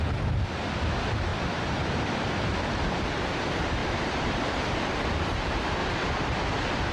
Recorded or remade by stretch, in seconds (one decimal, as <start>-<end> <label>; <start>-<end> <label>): 0.0-1.3 recorded; 1.3-2.9 remade; 2.9-3.8 recorded; 3.8-4.6 remade; 4.6-5.8 recorded; 5.8-6.9 remade